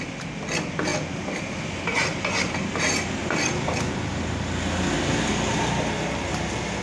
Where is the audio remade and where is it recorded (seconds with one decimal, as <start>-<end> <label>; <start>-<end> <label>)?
0.0-6.8 recorded